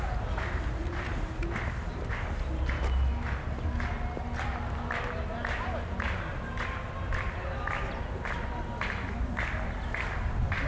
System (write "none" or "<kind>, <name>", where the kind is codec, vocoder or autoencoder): none